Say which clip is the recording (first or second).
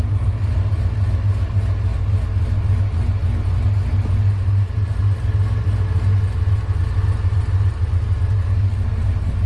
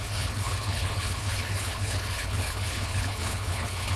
first